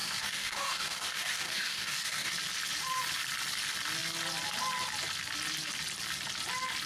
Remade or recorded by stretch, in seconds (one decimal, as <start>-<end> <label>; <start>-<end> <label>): 0.0-2.3 remade; 2.3-6.9 recorded

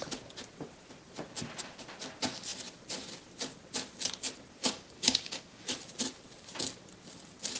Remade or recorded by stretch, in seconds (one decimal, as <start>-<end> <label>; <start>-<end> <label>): 0.0-4.6 recorded; 4.6-5.6 remade; 5.6-7.6 recorded

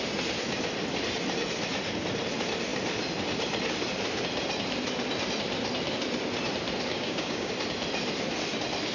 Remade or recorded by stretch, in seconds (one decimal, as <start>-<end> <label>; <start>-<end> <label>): 0.0-6.9 recorded; 6.9-7.5 remade; 7.5-8.9 recorded

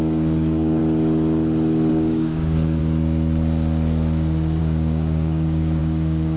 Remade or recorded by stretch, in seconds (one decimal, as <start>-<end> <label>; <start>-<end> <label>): 0.0-0.8 remade; 0.8-1.9 recorded; 1.9-2.8 remade; 2.8-4.6 recorded; 4.6-6.4 remade